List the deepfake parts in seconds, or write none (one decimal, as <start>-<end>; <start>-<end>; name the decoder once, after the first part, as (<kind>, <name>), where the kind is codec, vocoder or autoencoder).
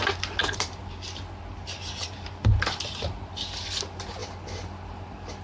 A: 0.4-3.6 (vocoder, BigVGAN v2)